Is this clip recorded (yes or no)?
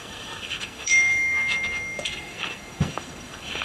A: no